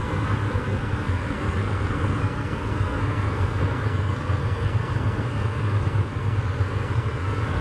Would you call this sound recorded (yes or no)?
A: no